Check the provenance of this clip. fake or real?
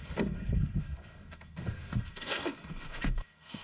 fake